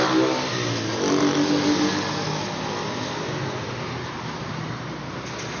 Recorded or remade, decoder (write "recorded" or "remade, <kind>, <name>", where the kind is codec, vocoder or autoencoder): recorded